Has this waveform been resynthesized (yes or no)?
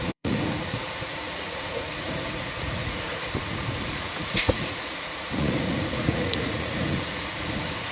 yes